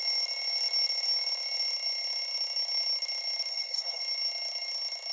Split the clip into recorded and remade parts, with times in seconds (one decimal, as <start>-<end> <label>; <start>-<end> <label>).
0.0-3.5 recorded; 3.5-4.0 remade; 4.0-5.1 recorded